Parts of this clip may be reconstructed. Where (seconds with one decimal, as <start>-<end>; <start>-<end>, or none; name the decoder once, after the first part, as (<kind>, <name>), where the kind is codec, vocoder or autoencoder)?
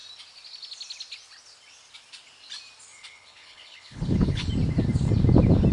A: 2.9-4.5 (codec, HILCodec)